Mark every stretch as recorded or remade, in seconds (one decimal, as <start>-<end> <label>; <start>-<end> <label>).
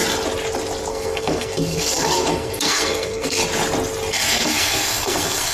0.0-0.9 recorded; 0.9-3.4 remade; 3.4-4.1 recorded; 4.1-5.5 remade